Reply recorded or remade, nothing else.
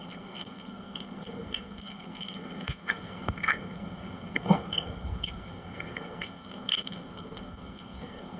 remade